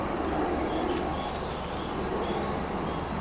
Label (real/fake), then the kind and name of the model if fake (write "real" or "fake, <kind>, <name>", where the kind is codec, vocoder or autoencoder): real